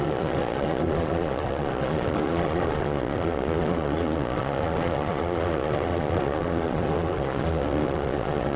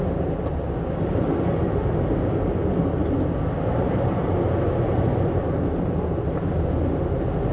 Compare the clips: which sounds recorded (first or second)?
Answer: second